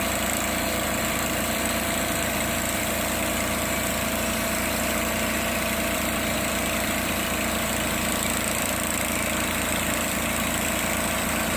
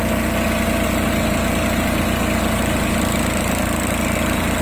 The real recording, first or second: second